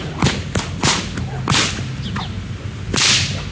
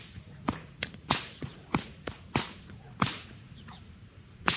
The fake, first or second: second